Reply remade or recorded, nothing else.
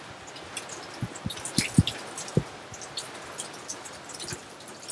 recorded